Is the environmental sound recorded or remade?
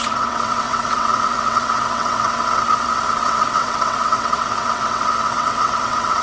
remade